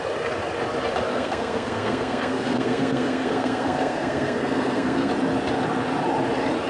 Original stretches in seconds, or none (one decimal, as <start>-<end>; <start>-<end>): 0.0-1.1; 5.1-6.7